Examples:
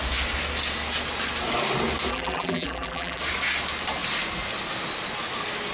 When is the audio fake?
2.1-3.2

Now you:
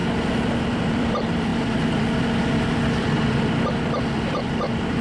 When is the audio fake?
0.6-5.0

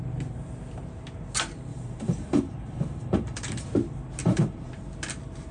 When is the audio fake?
1.7-3.7; 4.2-4.7